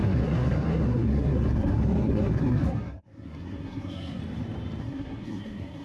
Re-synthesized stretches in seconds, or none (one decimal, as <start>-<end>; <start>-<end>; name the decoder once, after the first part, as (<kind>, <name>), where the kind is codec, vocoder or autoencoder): 0.0-4.2 (codec, SNAC); 4.8-5.8